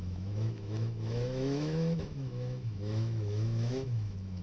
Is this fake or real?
fake